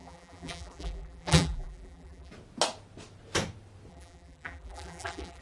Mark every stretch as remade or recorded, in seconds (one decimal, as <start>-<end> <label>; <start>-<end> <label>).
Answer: 0.0-2.3 remade; 2.3-3.9 recorded; 3.9-5.4 remade